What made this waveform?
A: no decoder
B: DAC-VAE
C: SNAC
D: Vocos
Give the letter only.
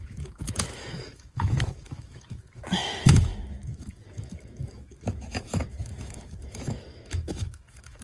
B